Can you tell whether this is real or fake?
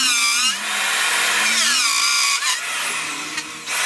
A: real